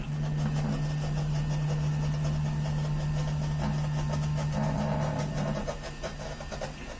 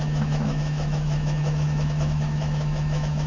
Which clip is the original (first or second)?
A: first